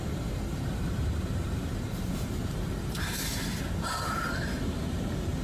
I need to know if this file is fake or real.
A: fake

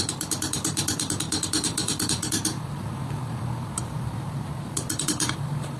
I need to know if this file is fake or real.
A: fake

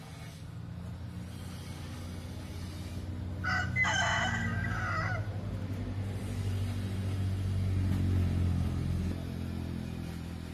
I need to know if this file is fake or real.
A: real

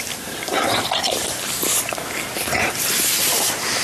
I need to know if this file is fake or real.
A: fake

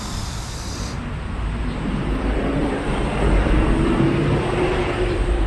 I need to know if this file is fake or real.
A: fake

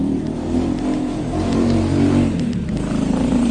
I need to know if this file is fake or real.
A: fake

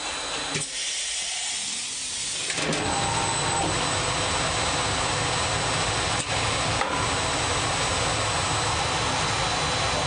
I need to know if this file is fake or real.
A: real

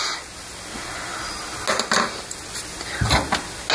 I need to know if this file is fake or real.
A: real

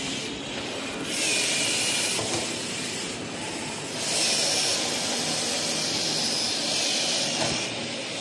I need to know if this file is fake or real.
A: real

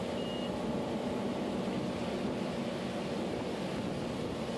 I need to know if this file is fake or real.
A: real